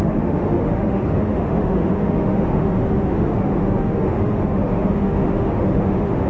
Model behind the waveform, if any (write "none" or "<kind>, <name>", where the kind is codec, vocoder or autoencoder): autoencoder, DAC-VAE